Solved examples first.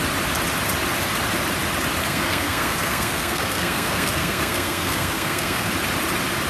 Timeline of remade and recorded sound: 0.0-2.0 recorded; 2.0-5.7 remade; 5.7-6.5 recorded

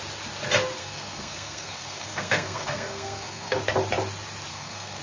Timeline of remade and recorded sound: 0.0-0.8 recorded; 0.8-3.6 remade; 3.6-4.5 recorded; 4.5-5.0 remade

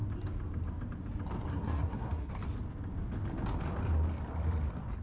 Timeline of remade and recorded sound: 0.0-1.5 recorded; 1.5-2.3 remade; 2.3-5.0 recorded

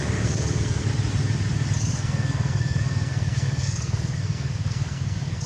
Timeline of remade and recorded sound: 0.0-0.9 remade; 0.9-1.8 recorded; 1.8-5.5 remade

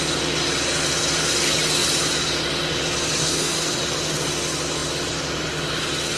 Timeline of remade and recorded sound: 0.0-3.2 recorded; 3.2-3.8 remade; 3.8-6.2 recorded

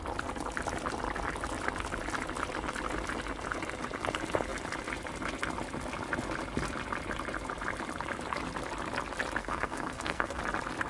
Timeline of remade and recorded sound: 0.0-9.4 recorded; 9.4-10.4 remade; 10.4-10.9 recorded

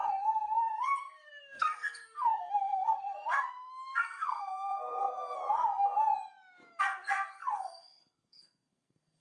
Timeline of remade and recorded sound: 0.0-5.4 remade; 5.4-6.8 recorded; 6.8-9.2 remade